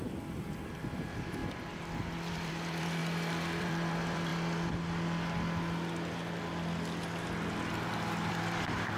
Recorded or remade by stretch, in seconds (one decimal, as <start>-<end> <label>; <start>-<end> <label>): 0.0-1.4 remade; 1.4-2.3 recorded; 2.3-3.0 remade; 3.0-3.6 recorded; 3.6-4.3 remade; 4.3-8.3 recorded; 8.3-9.0 remade